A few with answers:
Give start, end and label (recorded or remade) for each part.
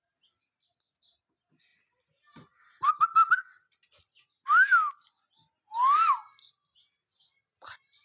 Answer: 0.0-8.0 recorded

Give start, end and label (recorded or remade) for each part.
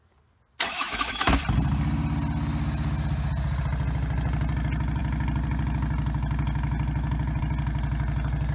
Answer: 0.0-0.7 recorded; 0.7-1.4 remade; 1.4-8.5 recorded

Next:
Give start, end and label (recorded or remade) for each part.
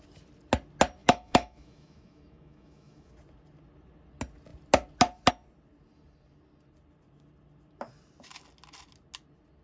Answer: 0.0-1.0 recorded; 1.0-3.1 remade; 3.1-9.6 recorded